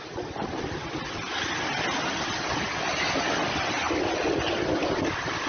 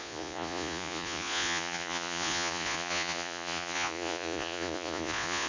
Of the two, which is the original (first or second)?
first